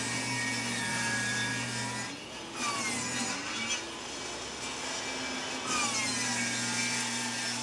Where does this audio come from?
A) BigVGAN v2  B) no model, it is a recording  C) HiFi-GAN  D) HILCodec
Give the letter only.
B